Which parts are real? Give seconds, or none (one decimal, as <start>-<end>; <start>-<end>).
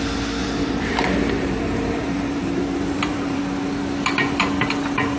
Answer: 0.0-0.4; 3.4-5.2